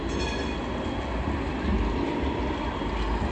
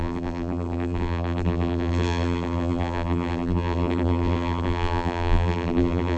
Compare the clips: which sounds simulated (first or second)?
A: second